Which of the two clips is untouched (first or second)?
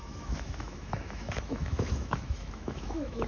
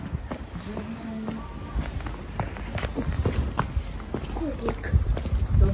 second